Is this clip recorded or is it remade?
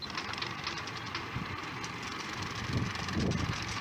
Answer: recorded